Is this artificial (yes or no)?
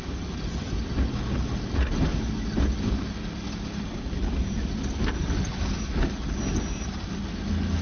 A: no